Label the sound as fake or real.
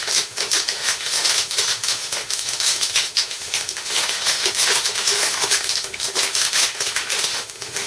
fake